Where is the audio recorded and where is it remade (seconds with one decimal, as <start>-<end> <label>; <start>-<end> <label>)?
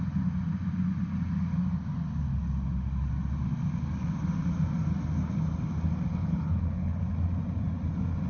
0.0-6.1 recorded; 6.1-7.0 remade; 7.0-8.3 recorded